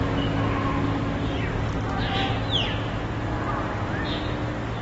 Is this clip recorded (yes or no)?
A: yes